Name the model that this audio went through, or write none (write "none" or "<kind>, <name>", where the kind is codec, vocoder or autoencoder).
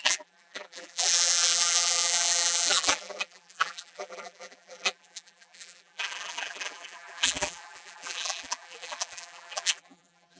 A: vocoder, BigVGAN v2